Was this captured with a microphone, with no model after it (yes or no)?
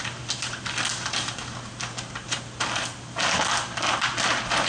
yes